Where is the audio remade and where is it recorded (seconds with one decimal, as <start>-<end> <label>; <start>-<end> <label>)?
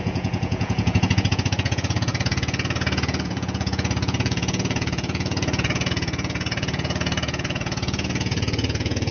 0.0-9.1 remade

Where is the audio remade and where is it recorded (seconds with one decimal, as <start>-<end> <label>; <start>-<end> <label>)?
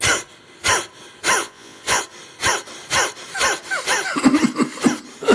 0.0-1.4 recorded; 1.4-2.0 remade; 2.0-5.3 recorded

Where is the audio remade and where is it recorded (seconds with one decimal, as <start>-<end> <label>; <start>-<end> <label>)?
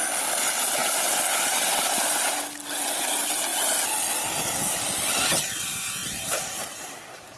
0.0-0.8 recorded; 0.8-2.2 remade; 2.2-6.0 recorded; 6.0-7.0 remade; 7.0-7.4 recorded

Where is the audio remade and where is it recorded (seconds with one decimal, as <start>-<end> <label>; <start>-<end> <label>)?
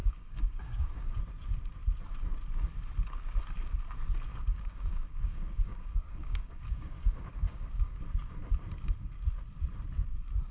0.0-1.2 remade; 1.2-4.3 recorded; 4.3-8.0 remade; 8.0-10.5 recorded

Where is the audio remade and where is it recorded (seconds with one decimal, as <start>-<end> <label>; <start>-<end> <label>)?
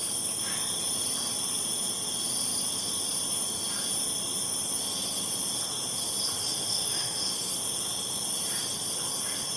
0.0-6.4 recorded; 6.4-7.5 remade; 7.5-9.6 recorded